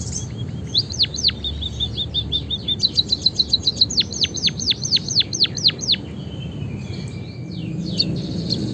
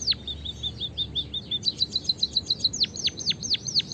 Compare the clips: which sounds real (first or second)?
second